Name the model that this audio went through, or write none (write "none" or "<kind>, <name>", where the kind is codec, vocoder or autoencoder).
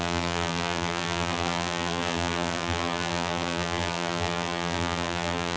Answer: vocoder, BigVGAN v2